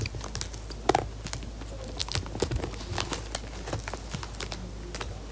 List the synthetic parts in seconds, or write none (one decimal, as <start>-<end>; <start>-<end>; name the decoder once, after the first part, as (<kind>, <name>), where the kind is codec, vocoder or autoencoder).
none